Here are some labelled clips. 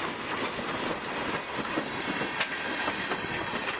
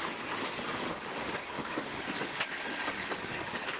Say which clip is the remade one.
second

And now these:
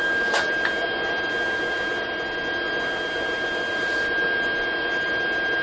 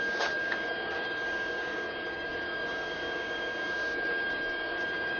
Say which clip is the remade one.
second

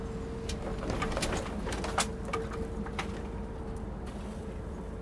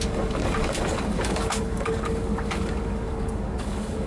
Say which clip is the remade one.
second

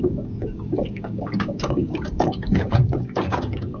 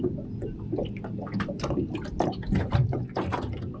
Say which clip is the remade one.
first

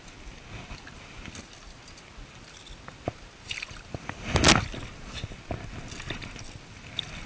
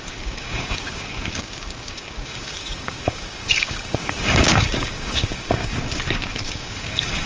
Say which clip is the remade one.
second